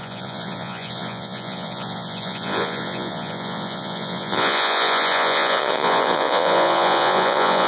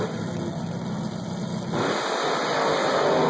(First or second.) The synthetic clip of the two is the first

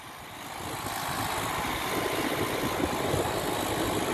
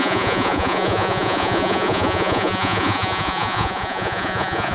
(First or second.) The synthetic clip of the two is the second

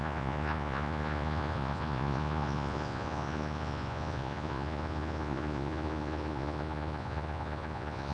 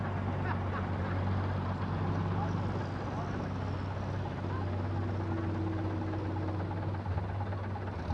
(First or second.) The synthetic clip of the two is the first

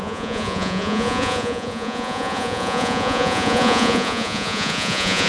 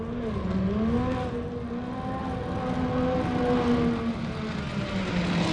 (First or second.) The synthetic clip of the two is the first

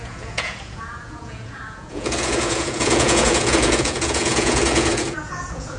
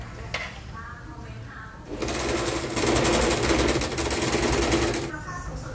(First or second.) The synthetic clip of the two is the first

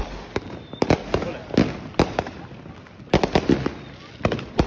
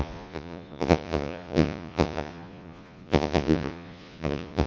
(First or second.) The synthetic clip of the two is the second